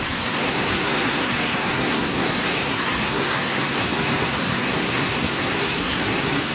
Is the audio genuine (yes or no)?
no